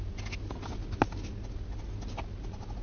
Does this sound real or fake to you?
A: real